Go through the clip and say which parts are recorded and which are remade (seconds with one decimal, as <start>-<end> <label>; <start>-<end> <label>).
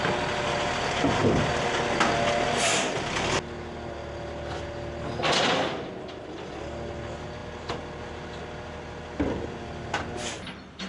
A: 0.0-10.9 recorded